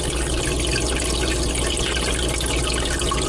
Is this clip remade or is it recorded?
recorded